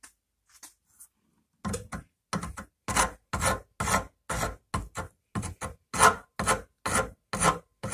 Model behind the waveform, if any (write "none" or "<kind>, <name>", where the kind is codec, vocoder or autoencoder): none